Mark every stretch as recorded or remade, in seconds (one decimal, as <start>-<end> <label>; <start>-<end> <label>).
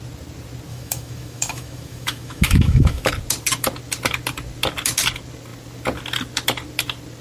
0.0-0.7 recorded; 0.7-3.1 remade; 3.1-7.2 recorded